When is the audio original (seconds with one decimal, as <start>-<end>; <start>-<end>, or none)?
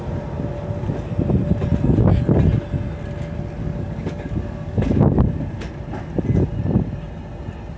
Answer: 0.0-3.6; 5.2-7.8